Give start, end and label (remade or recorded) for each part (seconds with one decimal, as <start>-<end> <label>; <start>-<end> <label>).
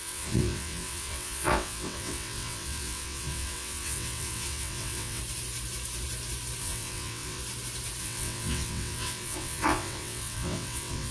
0.0-5.2 remade; 5.2-6.6 recorded; 6.6-7.4 remade; 7.4-8.0 recorded; 8.0-11.1 remade